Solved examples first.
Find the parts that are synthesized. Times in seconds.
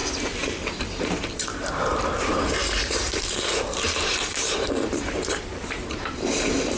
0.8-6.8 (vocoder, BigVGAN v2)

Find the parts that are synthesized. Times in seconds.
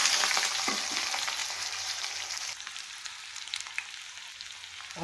0.0-0.7 (vocoder, BigVGAN v2); 1.4-2.1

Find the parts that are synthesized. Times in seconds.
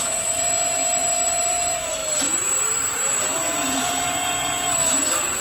0.0-5.4 (vocoder, BigVGAN v2)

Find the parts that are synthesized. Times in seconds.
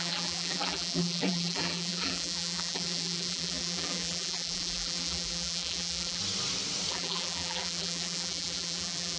0.0-6.2 (vocoder, BigVGAN v2); 6.9-9.2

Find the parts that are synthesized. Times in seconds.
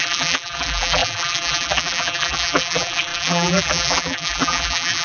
0.0-5.0 (vocoder, BigVGAN v2)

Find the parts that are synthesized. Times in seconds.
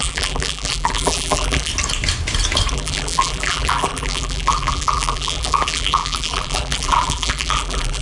0.0-1.7 (vocoder, BigVGAN v2); 2.7-8.0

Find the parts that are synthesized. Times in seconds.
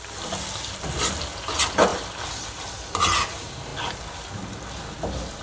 1.9-2.7 (vocoder, BigVGAN v2)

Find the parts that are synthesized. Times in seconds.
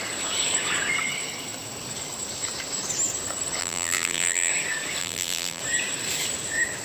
3.6-4.5 (vocoder, BigVGAN v2); 5.0-5.6